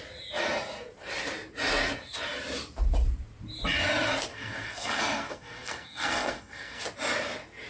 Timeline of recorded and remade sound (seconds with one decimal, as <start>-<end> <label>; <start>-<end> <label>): 0.0-4.3 recorded; 4.3-6.8 remade; 6.8-7.7 recorded